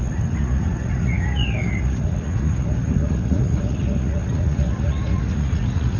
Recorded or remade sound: remade